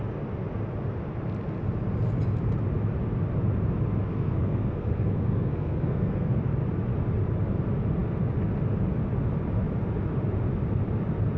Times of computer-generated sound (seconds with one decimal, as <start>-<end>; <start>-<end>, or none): 4.1-6.4